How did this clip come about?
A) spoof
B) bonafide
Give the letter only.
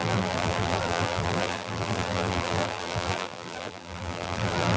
A